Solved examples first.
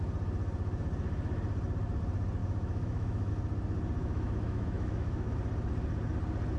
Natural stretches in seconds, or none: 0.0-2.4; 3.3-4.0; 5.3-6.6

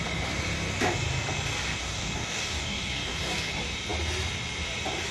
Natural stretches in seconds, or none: 0.0-1.8; 3.5-5.1

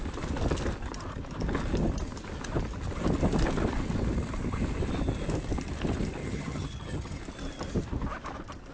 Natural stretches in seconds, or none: 0.0-6.2; 7.2-8.7